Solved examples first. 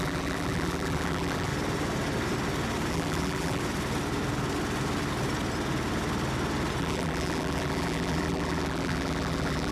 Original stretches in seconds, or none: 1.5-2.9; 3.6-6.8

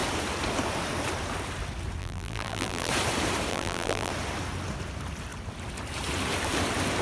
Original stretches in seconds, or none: 0.0-2.0; 2.9-3.5; 4.1-7.0

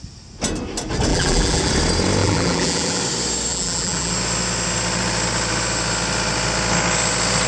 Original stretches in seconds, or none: 0.0-1.1; 1.7-2.2; 3.0-3.5; 4.1-7.5

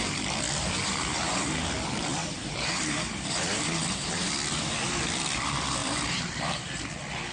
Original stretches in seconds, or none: 0.0-2.1; 4.3-5.8; 6.8-7.3